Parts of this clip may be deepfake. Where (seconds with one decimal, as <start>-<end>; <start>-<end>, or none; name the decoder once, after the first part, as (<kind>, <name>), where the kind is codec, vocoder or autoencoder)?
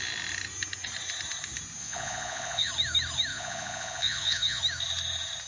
1.8-2.7 (vocoder, Vocos); 3.3-4.6